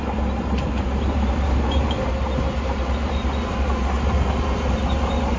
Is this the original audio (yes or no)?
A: no